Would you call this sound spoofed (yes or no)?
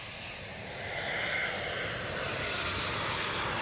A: no